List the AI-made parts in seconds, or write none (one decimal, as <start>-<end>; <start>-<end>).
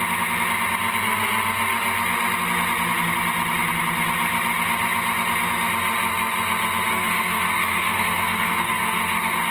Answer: 6.9-9.5